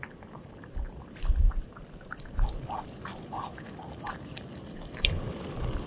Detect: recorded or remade recorded